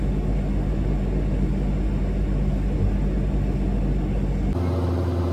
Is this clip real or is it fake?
real